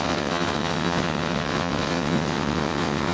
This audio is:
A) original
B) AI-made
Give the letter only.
B